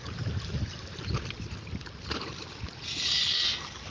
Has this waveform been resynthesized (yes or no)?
no